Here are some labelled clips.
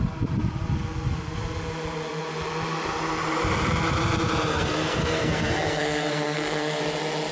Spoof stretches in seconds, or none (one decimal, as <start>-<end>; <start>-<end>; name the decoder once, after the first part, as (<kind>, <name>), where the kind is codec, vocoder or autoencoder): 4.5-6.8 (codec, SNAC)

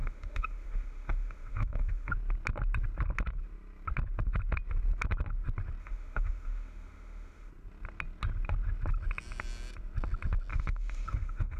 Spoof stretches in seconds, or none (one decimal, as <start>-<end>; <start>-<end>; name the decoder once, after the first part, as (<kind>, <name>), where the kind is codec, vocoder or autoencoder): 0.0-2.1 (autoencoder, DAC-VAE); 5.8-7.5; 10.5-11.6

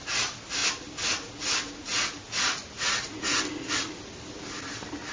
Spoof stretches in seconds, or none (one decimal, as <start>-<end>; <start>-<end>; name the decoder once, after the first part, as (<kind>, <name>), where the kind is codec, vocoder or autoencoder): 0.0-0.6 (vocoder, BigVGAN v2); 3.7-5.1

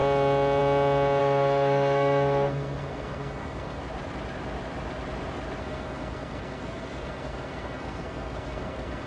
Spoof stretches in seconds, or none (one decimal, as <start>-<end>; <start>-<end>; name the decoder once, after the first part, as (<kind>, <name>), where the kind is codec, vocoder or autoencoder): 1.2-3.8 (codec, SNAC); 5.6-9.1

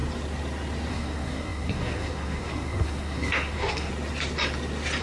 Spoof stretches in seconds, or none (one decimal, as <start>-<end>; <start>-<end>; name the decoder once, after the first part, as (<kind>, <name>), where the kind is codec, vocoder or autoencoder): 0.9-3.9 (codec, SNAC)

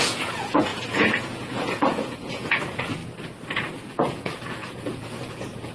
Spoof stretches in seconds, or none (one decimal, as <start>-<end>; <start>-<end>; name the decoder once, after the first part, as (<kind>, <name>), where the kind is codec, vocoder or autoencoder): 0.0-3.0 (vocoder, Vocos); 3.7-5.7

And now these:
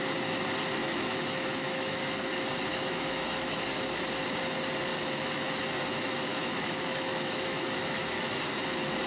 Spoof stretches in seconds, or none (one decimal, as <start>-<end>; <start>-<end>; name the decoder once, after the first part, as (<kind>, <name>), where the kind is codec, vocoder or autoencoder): 0.8-2.0 (autoencoder, DAC-VAE); 2.7-3.6; 4.9-5.5; 6.3-8.4